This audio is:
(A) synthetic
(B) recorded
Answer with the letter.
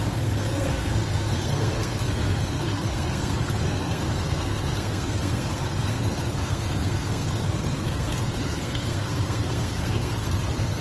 A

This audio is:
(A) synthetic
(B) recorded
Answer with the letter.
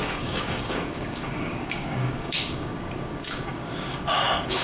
A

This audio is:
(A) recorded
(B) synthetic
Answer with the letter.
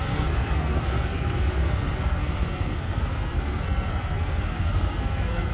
B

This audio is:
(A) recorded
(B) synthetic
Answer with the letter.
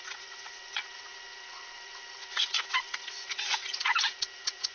B